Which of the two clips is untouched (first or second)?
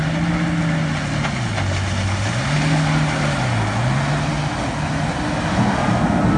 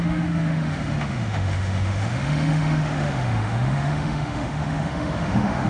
first